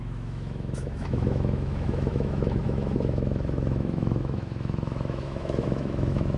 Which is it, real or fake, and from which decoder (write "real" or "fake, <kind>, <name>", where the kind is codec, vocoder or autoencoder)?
fake, autoencoder, DAC-VAE